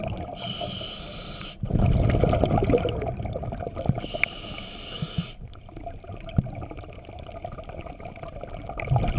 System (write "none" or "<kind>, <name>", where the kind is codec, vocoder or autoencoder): none